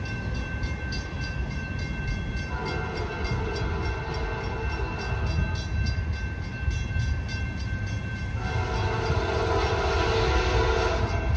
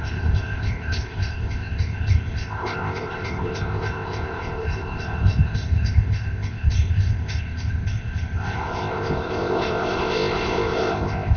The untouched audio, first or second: first